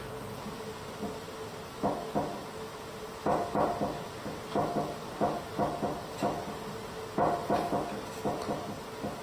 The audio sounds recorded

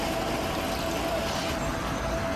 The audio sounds recorded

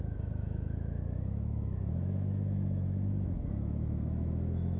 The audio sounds remade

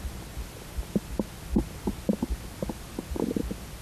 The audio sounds recorded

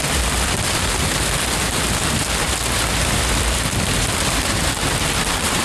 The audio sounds remade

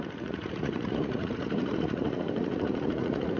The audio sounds remade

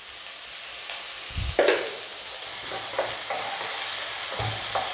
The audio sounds recorded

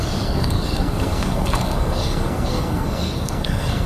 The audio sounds remade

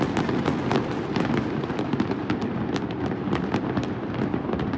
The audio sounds recorded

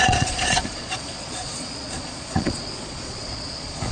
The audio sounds remade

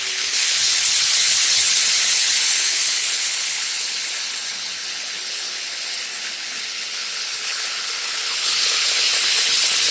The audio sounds remade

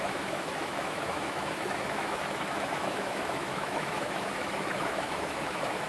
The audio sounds remade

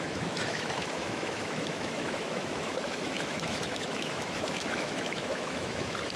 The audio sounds remade